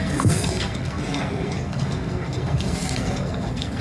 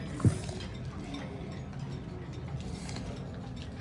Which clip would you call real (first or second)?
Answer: second